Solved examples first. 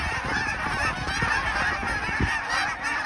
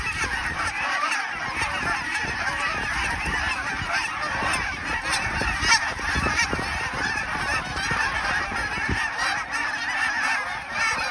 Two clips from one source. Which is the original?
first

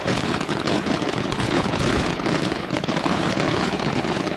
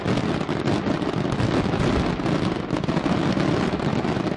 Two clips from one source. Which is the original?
second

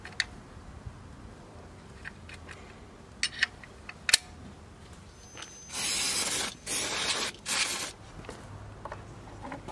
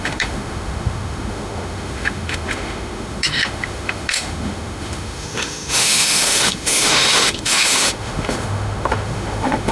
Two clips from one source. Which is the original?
first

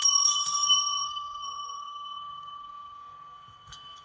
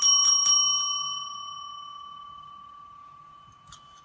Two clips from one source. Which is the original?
second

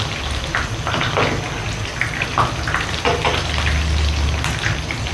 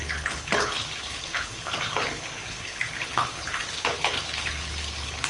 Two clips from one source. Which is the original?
first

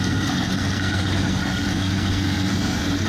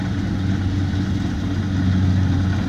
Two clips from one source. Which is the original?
second